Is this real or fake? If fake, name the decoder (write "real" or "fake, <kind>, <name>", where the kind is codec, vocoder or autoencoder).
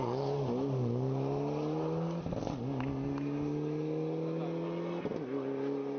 real